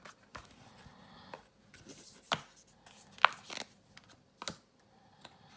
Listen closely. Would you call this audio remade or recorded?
recorded